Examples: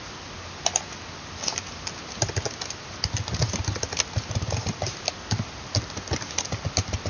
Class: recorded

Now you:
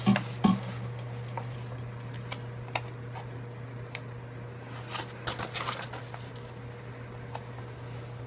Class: recorded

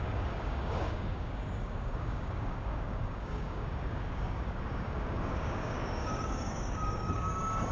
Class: remade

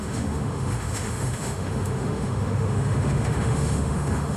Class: remade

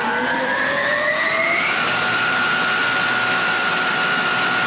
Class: remade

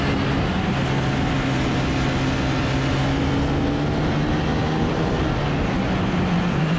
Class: recorded